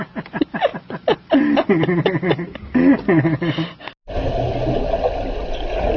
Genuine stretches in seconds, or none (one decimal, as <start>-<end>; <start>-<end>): 0.0-6.0